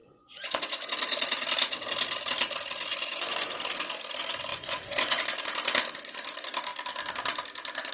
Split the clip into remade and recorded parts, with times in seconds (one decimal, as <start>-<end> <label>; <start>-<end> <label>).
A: 0.0-0.6 remade; 0.6-2.9 recorded; 2.9-3.5 remade; 3.5-4.5 recorded; 4.5-5.2 remade; 5.2-7.9 recorded